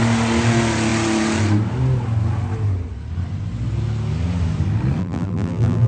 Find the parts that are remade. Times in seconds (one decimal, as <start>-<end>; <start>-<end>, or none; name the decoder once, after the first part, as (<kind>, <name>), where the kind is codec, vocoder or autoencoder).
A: 5.0-5.9 (vocoder, BigVGAN v2)